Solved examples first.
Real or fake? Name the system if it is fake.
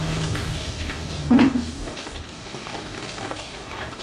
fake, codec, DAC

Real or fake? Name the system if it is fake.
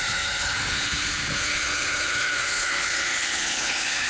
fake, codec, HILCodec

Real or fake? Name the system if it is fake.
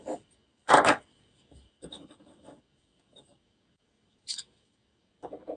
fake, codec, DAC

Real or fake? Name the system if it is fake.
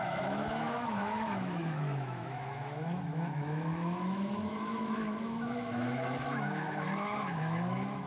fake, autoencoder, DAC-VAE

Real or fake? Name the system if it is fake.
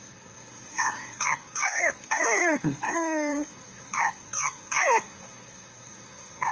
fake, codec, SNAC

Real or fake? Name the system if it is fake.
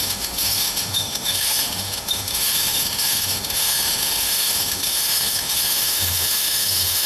fake, autoencoder, DAC-VAE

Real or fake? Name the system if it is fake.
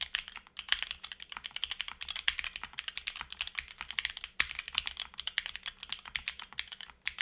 real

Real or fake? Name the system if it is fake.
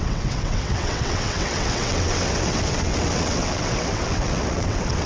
fake, vocoder, WaveNeXt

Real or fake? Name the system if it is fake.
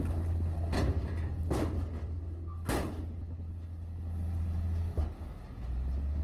real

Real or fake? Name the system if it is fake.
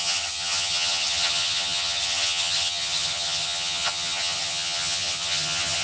fake, vocoder, HiFi-GAN